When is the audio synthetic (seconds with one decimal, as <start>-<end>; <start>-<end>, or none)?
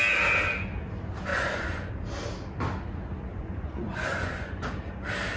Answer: 1.3-1.9; 3.3-4.7